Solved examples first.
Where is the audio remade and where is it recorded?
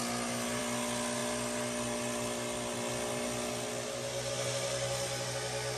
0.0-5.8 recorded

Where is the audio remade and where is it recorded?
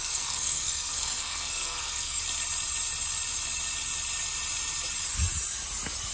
0.0-2.2 remade; 2.2-6.1 recorded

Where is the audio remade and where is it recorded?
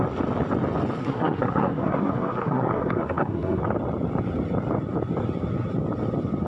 0.0-1.0 recorded; 1.0-3.6 remade; 3.6-6.5 recorded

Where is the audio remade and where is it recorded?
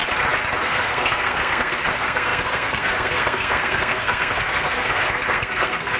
0.0-0.6 recorded; 0.6-6.0 remade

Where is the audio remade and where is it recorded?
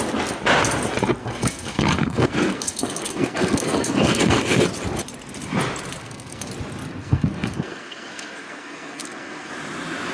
0.0-1.2 recorded; 1.2-4.6 remade; 4.6-6.0 recorded; 6.0-6.5 remade; 6.5-7.0 recorded; 7.0-9.5 remade; 9.5-10.1 recorded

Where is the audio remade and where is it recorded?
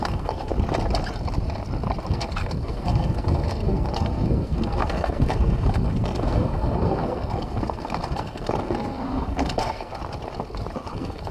0.0-0.5 remade; 0.5-2.1 recorded; 2.1-9.9 remade; 9.9-10.9 recorded; 10.9-11.3 remade